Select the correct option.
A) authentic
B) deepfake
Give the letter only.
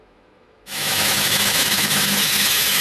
B